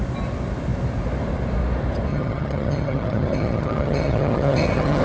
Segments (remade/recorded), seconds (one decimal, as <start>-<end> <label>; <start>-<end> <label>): 0.0-2.1 recorded; 2.1-5.0 remade